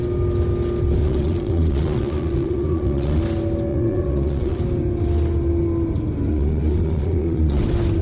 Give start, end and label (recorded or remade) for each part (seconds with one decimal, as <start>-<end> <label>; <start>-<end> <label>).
0.0-1.0 recorded; 1.0-3.2 remade; 3.2-3.7 recorded; 3.7-4.6 remade; 4.6-6.3 recorded; 6.3-7.6 remade; 7.6-8.0 recorded